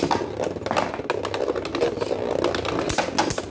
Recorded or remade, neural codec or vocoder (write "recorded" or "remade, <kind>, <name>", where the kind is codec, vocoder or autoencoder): recorded